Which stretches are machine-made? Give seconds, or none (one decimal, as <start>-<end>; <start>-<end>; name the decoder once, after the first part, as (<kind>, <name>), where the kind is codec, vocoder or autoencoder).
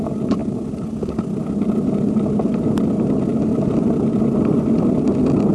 none